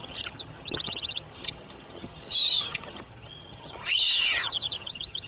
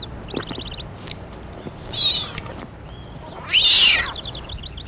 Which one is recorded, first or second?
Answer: second